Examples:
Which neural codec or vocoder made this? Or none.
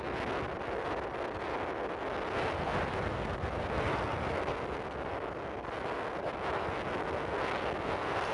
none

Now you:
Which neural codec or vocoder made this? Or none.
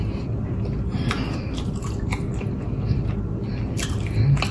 none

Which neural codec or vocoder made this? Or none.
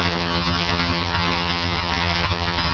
vocoder, HiFi-GAN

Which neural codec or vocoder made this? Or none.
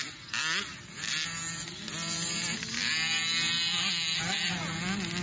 none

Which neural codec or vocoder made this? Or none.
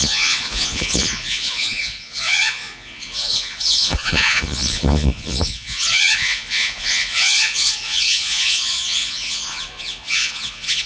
vocoder, Vocos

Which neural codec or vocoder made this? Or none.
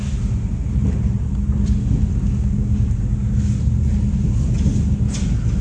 none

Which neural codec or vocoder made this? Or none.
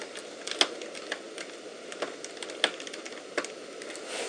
none